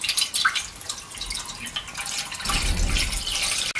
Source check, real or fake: real